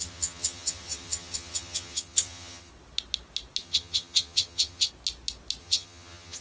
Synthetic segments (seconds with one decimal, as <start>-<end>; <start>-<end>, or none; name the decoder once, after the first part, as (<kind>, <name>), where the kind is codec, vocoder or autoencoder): 0.0-2.7 (vocoder, HiFi-GAN); 3.6-4.9; 5.6-6.4